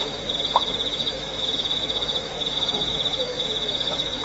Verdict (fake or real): fake